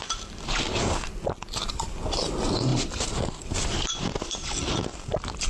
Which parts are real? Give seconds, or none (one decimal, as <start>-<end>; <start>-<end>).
1.1-2.7; 4.1-5.5